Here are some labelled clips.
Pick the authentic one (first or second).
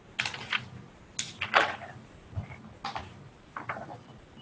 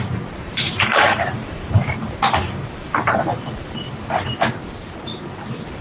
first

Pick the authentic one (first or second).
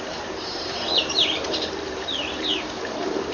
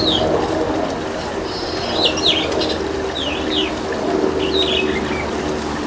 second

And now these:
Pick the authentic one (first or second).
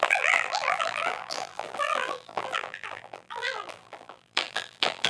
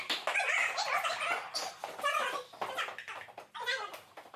second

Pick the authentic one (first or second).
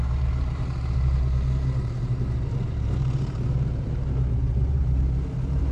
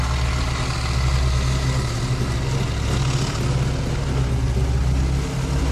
second